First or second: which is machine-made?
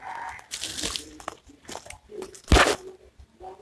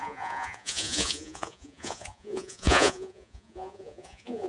second